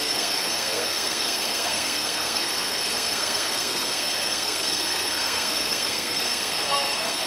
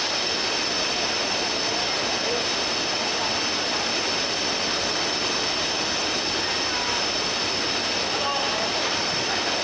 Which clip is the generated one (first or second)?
first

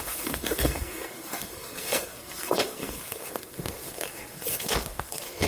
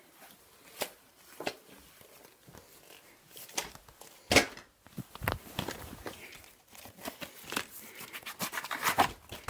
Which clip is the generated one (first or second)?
first